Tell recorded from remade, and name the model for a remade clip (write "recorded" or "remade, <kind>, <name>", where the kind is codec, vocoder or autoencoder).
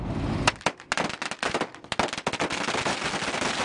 recorded